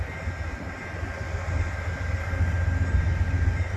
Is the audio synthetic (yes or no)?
no